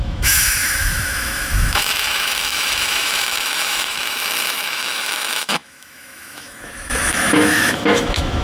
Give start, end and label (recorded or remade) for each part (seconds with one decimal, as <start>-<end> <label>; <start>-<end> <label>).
0.0-8.4 remade